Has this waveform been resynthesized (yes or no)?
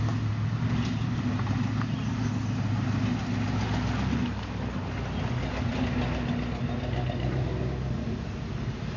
no